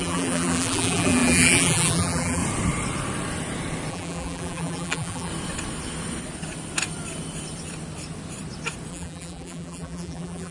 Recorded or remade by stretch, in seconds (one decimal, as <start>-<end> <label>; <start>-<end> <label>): 0.0-2.4 remade; 2.4-3.9 recorded; 3.9-5.3 remade; 5.3-8.9 recorded; 8.9-10.5 remade